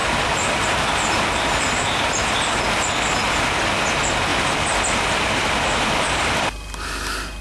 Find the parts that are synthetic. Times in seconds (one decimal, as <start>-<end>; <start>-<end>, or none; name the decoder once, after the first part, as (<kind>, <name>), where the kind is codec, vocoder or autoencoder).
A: none